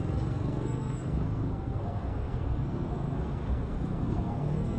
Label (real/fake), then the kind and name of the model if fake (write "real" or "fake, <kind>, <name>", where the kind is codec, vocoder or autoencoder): fake, codec, SNAC